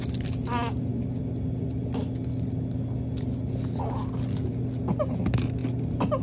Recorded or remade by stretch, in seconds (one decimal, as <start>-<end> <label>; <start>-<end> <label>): 0.0-6.2 recorded